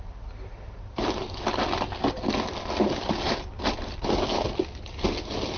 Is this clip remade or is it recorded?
recorded